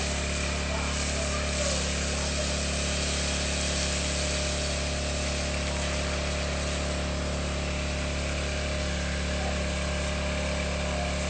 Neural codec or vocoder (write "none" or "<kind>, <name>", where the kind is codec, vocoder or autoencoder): none